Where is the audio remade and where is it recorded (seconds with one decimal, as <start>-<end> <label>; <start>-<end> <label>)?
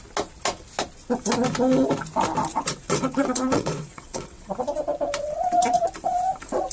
0.0-2.5 recorded; 2.5-4.5 remade; 4.5-6.7 recorded